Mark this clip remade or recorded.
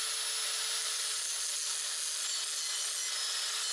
recorded